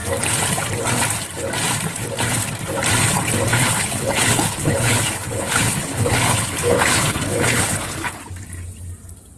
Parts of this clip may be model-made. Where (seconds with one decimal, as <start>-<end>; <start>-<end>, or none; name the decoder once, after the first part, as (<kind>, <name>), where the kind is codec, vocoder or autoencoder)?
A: 3.5-8.2 (codec, HILCodec)